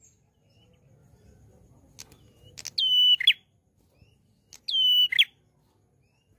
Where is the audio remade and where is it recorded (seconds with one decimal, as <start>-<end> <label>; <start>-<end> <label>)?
0.0-6.4 recorded